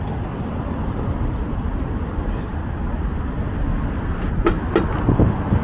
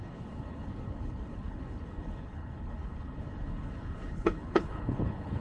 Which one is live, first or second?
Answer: first